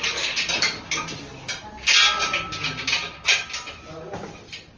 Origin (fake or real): real